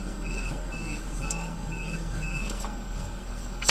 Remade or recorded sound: remade